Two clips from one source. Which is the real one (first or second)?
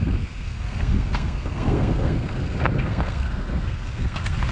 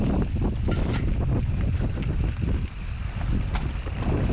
second